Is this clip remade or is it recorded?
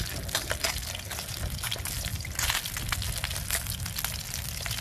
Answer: recorded